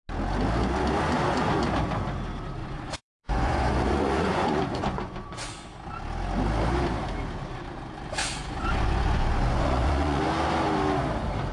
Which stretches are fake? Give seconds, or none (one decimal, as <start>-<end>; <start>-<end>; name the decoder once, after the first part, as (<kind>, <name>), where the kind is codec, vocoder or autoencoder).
2.6-5.5 (vocoder, Vocos); 8.2-10.2